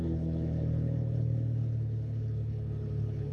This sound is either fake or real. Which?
fake